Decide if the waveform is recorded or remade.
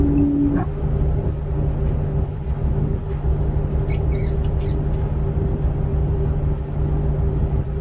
recorded